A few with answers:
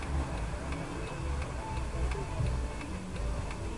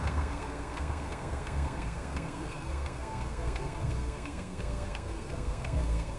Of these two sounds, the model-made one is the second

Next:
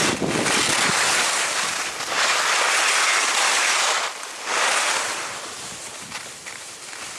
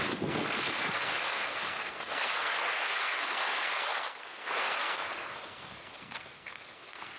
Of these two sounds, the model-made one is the second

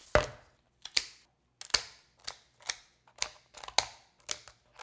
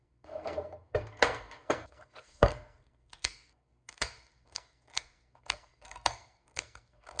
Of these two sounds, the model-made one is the second